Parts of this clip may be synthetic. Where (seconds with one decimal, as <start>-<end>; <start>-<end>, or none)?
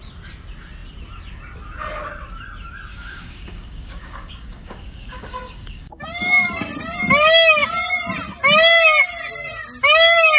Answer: 2.9-6.7